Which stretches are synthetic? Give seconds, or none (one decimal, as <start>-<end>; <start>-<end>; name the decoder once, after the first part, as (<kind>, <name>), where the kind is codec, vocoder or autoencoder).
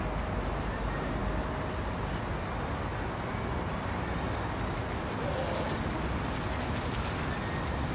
none